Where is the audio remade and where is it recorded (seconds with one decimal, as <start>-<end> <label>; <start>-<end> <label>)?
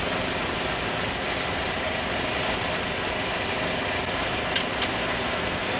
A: 0.0-4.9 recorded; 4.9-5.8 remade